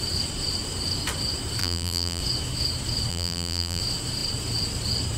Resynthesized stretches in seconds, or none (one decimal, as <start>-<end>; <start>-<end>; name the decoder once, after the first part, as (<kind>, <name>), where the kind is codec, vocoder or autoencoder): 1.6-2.2 (vocoder, BigVGAN v2); 3.1-3.8